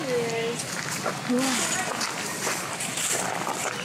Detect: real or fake real